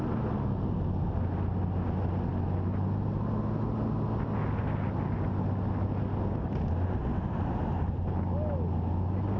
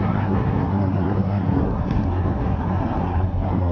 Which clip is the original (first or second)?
first